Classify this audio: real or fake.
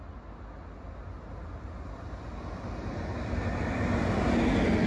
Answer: real